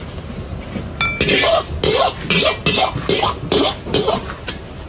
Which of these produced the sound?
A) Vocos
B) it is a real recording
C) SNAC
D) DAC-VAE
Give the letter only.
B